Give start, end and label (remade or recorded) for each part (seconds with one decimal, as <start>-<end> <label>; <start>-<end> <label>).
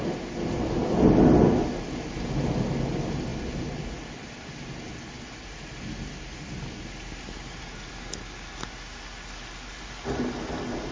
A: 0.0-10.9 recorded